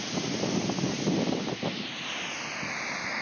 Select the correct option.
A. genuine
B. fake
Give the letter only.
A